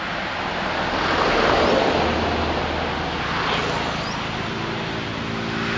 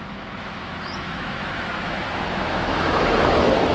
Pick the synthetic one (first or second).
second